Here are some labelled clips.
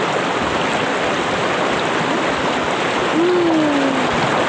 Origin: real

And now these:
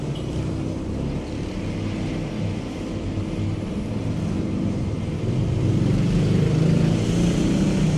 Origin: real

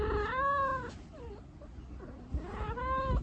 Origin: real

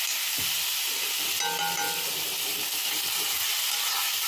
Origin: real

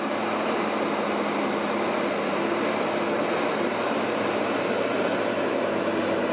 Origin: real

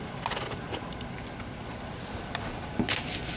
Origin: real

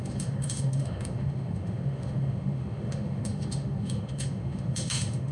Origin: fake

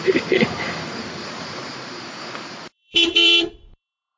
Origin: fake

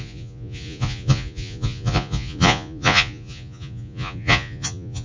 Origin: fake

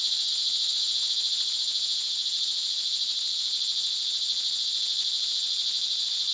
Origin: real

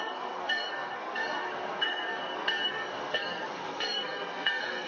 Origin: fake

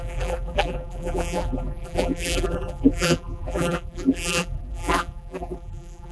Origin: fake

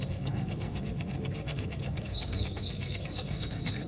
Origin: fake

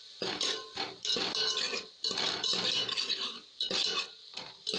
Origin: real